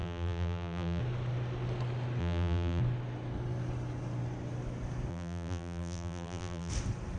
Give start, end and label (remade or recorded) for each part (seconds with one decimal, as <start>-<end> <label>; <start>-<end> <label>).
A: 0.0-1.0 remade; 1.0-2.2 recorded; 2.2-2.8 remade; 2.8-5.1 recorded; 5.1-6.7 remade; 6.7-7.2 recorded